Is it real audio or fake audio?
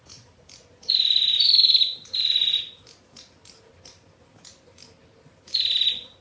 real